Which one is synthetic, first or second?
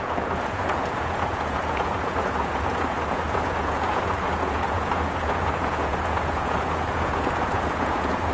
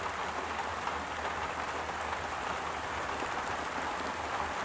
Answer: first